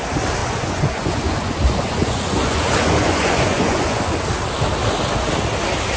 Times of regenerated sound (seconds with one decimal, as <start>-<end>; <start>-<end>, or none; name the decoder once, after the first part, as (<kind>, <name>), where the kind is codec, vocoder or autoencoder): 0.4-4.0 (vocoder, Vocos)